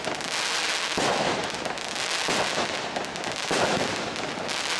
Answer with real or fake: real